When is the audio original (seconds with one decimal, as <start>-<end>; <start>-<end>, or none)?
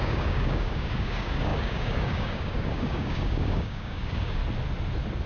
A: 4.4-5.3